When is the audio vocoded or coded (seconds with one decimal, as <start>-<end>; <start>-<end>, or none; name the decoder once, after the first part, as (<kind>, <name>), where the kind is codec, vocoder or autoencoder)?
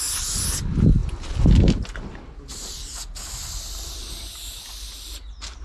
2.5-4.1 (vocoder, BigVGAN v2)